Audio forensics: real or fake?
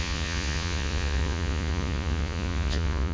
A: fake